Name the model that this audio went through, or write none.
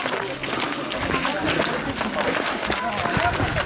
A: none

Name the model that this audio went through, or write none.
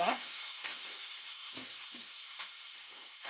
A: codec, SNAC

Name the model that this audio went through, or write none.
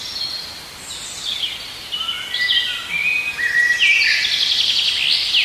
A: none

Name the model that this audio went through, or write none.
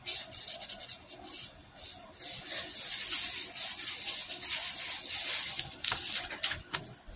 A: none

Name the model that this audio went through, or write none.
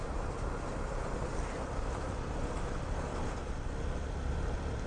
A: none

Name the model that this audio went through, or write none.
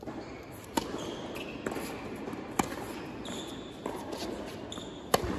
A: none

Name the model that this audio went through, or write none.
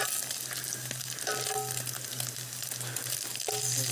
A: none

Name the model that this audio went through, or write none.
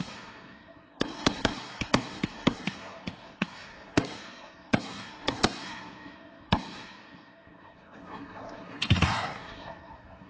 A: codec, SNAC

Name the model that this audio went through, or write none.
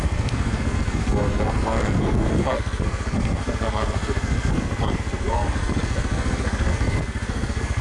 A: codec, SNAC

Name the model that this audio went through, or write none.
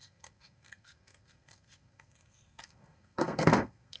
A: codec, SNAC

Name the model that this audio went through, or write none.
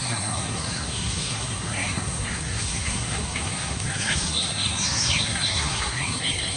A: codec, SNAC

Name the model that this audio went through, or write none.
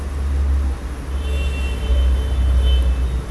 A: none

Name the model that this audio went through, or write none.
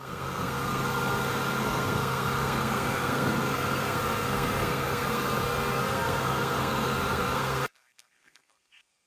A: codec, SNAC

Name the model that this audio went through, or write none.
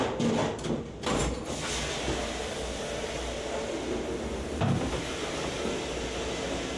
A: none